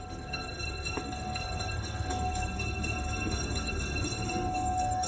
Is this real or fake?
fake